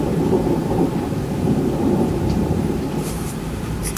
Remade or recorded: remade